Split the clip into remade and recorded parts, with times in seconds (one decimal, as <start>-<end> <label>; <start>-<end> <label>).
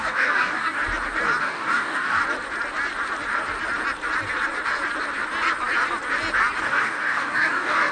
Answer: 0.0-0.8 remade; 0.8-1.4 recorded; 1.4-2.2 remade; 2.2-6.6 recorded; 6.6-7.9 remade